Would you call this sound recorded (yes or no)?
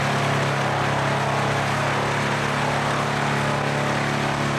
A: yes